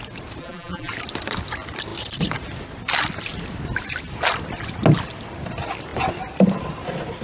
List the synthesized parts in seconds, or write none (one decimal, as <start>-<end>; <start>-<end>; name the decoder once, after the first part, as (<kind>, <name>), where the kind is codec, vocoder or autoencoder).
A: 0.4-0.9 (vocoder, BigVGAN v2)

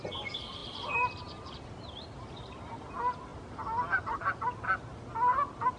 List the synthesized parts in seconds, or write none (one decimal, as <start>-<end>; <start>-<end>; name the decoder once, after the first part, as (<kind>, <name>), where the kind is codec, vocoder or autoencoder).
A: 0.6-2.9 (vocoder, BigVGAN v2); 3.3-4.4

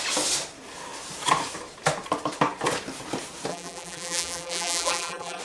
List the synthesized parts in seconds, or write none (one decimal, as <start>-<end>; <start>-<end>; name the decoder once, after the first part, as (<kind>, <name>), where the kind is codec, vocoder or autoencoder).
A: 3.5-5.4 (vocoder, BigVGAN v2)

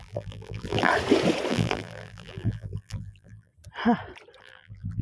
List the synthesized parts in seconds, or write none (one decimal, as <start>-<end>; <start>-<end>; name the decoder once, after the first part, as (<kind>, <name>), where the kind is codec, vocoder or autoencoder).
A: 0.0-0.9 (vocoder, BigVGAN v2); 1.5-3.5; 4.4-5.0

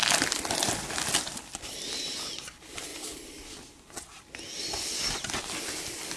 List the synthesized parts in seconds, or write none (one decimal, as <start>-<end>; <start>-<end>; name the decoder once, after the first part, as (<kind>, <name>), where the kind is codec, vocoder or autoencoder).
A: 0.9-2.9 (vocoder, BigVGAN v2); 5.6-6.2

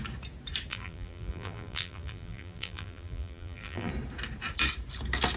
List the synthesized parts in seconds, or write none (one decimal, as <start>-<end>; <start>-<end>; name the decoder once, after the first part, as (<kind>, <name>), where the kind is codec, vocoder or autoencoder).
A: 0.7-3.9 (vocoder, BigVGAN v2)

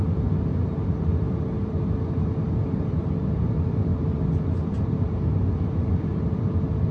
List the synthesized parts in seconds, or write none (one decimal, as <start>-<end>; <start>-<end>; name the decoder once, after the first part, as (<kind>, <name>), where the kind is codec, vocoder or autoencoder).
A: 0.6-1.1 (vocoder, BigVGAN v2)